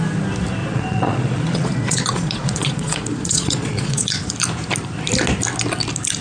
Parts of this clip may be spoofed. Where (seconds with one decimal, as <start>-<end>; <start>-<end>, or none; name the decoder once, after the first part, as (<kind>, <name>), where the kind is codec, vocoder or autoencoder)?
0.6-4.3 (vocoder, Vocos)